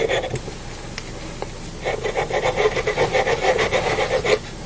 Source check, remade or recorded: recorded